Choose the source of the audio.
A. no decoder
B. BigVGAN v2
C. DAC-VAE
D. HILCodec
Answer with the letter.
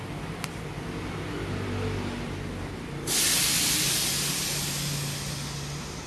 A